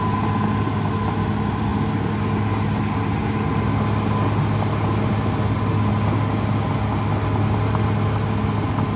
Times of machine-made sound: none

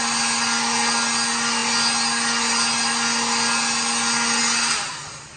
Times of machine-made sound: none

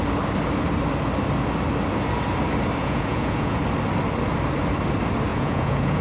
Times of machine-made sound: 2.8-3.6 (vocoder, Vocos); 5.3-6.0

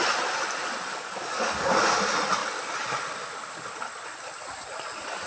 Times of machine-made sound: 0.9-1.8 (codec, DAC)

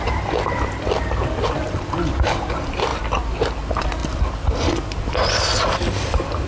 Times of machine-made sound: 0.0-2.9 (vocoder, BigVGAN v2); 3.6-4.0; 4.7-6.5

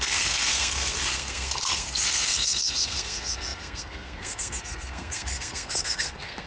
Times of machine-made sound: 0.0-6.5 (codec, SNAC)